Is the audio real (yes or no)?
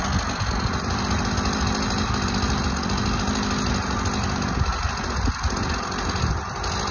yes